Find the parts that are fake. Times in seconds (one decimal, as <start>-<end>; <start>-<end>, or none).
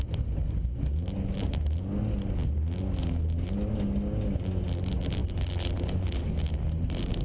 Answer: none